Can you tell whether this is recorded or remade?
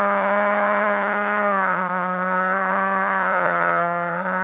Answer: remade